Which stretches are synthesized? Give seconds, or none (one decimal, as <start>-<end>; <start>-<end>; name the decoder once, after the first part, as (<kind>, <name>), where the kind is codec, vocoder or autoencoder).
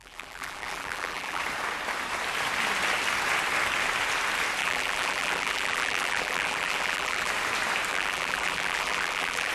0.0-1.4 (vocoder, BigVGAN v2); 4.6-7.3; 7.9-9.5